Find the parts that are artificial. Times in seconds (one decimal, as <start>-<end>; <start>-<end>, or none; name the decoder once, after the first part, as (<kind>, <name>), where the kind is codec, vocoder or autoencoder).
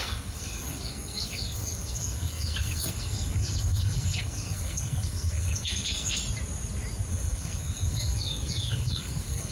0.0-6.2 (codec, SNAC); 7.1-9.5